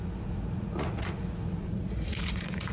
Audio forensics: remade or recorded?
remade